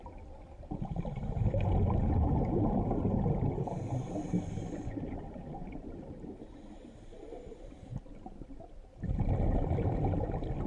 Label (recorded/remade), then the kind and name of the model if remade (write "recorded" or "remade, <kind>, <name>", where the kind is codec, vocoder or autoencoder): recorded